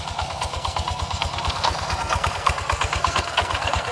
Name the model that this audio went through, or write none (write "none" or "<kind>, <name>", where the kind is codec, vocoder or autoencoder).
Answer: codec, SNAC